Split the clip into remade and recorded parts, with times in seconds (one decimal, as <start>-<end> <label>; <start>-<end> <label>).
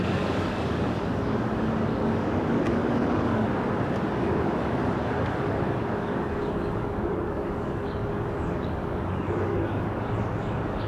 0.0-3.5 remade; 3.5-4.1 recorded; 4.1-10.9 remade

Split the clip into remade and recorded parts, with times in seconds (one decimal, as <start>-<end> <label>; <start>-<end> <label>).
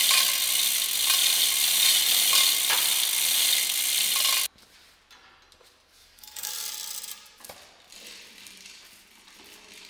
0.0-6.0 recorded; 6.0-6.5 remade; 6.5-9.9 recorded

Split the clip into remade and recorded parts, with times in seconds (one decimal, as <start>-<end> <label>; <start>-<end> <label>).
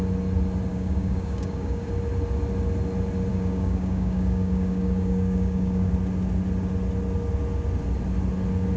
0.0-0.7 recorded; 0.7-1.9 remade; 1.9-3.3 recorded; 3.3-5.9 remade; 5.9-8.8 recorded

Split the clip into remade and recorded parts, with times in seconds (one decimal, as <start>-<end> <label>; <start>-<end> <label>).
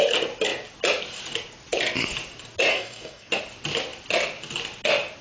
0.0-2.7 recorded; 2.7-3.3 remade; 3.3-5.2 recorded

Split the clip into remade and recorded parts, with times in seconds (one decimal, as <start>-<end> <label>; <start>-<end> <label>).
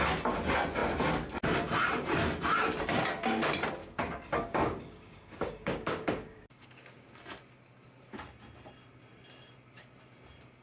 0.0-3.8 recorded; 3.8-7.1 remade; 7.1-10.6 recorded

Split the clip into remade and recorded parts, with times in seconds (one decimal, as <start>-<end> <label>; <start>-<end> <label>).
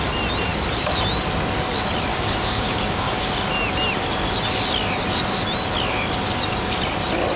0.0-2.1 recorded; 2.1-3.3 remade; 3.3-7.4 recorded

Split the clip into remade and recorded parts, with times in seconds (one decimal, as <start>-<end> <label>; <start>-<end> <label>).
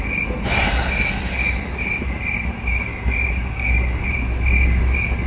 0.0-2.9 recorded; 2.9-4.1 remade; 4.1-5.3 recorded